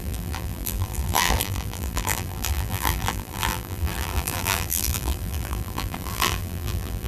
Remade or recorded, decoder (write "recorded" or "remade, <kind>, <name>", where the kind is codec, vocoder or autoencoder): remade, vocoder, BigVGAN v2